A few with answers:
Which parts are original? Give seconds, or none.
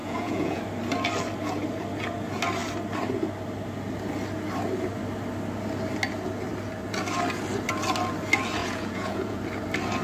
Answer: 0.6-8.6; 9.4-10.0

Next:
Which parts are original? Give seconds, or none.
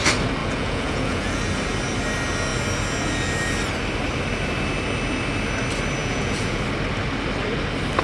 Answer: 0.0-0.4; 1.4-6.0; 6.6-8.0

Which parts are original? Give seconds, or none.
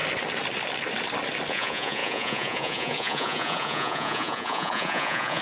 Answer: 0.0-1.5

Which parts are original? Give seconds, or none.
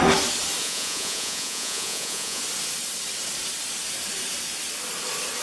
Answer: 0.0-0.6; 2.4-5.4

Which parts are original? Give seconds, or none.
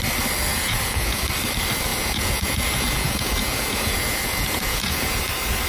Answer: 0.0-0.5; 1.2-1.9; 5.2-5.7